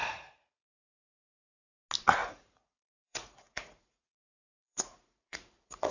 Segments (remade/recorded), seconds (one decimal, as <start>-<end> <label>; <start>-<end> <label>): 0.0-1.2 remade; 1.2-2.2 recorded; 2.2-5.9 remade